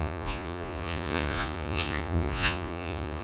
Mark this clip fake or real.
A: fake